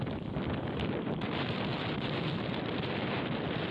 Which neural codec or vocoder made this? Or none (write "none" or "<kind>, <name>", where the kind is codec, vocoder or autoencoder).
vocoder, BigVGAN v2